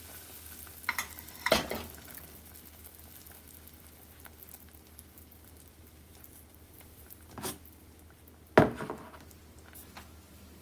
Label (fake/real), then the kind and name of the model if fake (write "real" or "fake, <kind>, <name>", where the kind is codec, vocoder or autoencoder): real